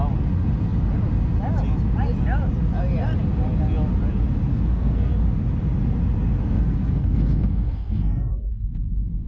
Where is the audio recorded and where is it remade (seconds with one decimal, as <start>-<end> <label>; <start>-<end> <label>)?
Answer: 0.0-4.5 recorded; 4.5-5.1 remade; 5.1-6.4 recorded; 6.4-9.3 remade